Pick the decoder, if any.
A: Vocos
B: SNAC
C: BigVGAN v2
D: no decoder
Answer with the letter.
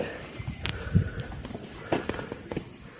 C